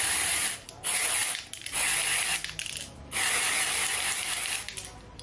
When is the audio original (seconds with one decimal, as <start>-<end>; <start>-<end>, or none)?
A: 0.0-5.2